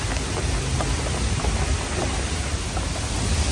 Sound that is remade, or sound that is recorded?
recorded